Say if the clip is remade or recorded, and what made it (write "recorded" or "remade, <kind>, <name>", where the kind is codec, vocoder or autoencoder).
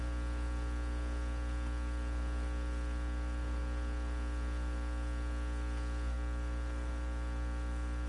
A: recorded